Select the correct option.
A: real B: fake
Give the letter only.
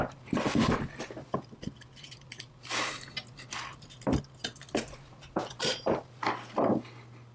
A